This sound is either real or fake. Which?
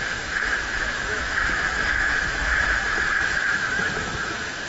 fake